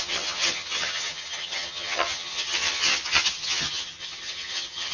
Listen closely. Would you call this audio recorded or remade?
remade